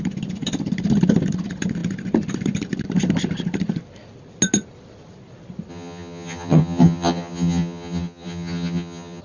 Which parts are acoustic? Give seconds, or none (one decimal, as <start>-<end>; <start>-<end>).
0.0-5.7